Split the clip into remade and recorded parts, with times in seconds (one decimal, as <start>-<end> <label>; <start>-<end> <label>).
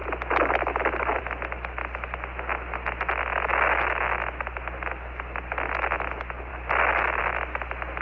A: 0.0-8.0 recorded